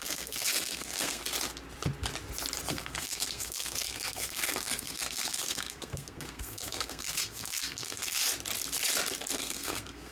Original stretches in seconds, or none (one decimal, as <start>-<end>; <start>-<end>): 1.2-2.7; 8.2-9.3